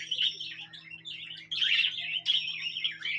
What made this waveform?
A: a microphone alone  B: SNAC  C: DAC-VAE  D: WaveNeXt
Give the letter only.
A